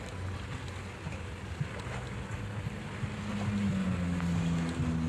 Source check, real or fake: real